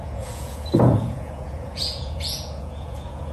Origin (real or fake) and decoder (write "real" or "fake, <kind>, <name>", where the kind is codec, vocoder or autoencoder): fake, vocoder, Vocos